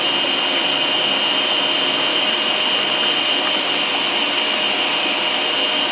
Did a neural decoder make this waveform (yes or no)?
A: no